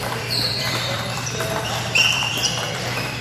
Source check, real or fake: fake